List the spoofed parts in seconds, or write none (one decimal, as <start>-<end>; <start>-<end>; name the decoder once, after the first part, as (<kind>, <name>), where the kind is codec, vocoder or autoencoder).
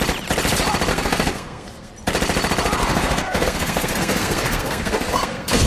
0.9-1.9 (codec, SNAC); 2.8-5.7